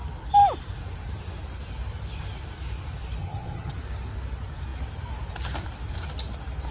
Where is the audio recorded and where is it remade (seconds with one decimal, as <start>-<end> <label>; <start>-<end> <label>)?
0.0-3.2 recorded; 3.2-3.7 remade; 3.7-6.7 recorded